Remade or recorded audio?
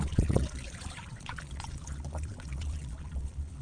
remade